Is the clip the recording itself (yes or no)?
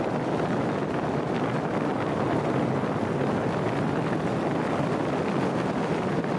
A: yes